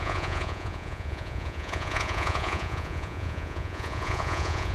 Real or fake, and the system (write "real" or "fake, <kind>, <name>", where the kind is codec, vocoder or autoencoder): fake, vocoder, Vocos